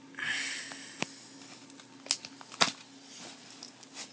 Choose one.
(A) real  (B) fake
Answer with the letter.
A